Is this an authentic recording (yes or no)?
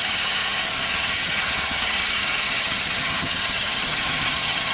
no